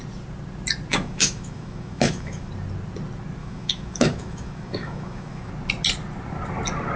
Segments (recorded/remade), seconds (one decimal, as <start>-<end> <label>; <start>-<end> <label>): 0.0-0.9 recorded; 0.9-2.5 remade; 2.5-3.4 recorded; 3.4-5.5 remade; 5.5-7.0 recorded